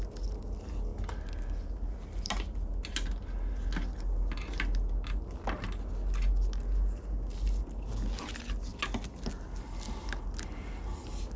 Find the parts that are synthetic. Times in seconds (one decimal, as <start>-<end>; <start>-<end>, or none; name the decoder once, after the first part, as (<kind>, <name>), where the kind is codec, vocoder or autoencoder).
none